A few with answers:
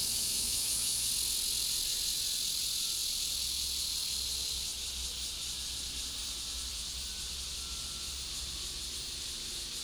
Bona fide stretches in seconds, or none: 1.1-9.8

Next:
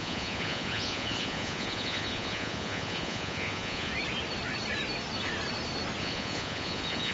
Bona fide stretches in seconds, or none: 3.9-6.0

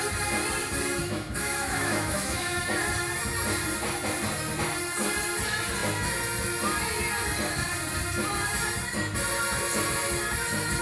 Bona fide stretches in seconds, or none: 0.0-1.0; 2.6-10.8

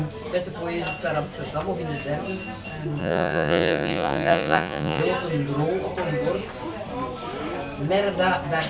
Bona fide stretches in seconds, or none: 0.0-3.0; 5.0-8.7